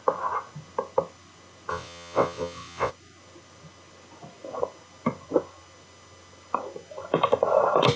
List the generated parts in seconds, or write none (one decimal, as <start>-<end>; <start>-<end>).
1.7-2.9